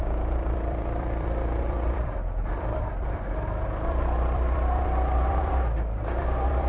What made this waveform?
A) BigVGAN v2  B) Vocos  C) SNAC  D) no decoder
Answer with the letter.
A